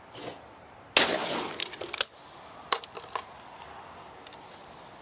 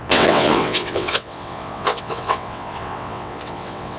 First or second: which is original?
first